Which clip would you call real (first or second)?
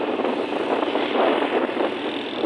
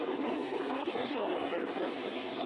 first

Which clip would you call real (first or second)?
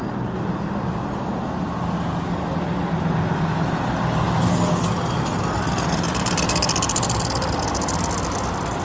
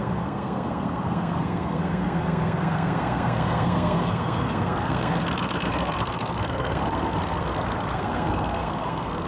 first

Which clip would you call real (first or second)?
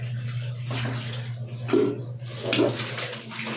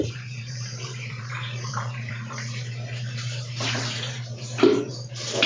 first